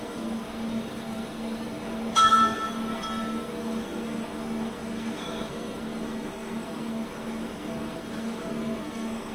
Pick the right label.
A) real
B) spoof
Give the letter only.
B